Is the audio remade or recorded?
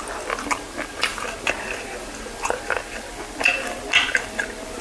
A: recorded